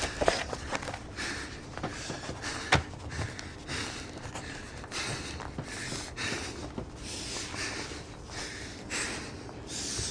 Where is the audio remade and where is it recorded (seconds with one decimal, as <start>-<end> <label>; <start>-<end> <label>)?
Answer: 0.0-10.1 recorded